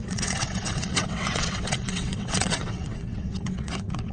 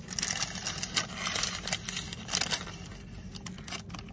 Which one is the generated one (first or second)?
first